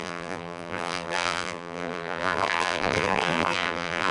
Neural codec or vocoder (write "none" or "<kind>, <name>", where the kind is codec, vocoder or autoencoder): vocoder, BigVGAN v2